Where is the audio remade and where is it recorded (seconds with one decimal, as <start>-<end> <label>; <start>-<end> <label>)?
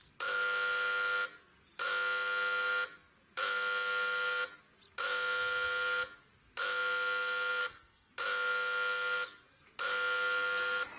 0.0-7.6 recorded; 7.6-8.1 remade; 8.1-11.0 recorded